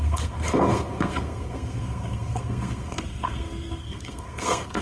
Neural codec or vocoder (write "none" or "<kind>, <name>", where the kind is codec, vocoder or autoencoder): codec, SNAC